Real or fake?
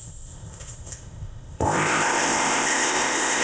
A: fake